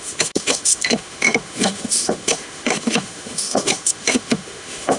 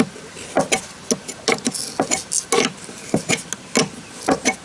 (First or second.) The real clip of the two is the second